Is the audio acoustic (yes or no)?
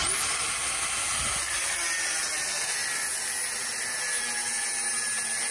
yes